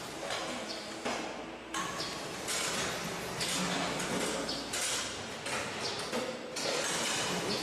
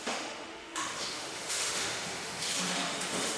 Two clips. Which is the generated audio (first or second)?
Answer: second